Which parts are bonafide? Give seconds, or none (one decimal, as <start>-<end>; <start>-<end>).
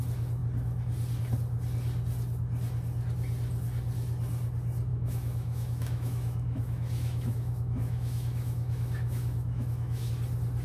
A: 0.0-4.9; 10.1-10.6